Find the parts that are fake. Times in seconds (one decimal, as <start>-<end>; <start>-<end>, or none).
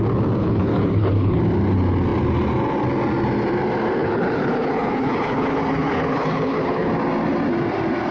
0.4-1.4; 4.0-6.9